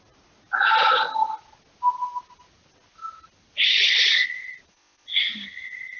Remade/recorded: recorded